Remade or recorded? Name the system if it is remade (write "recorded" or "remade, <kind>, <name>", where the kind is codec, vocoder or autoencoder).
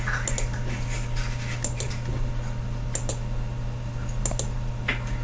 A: recorded